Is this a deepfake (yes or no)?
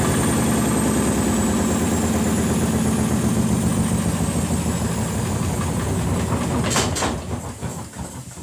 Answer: no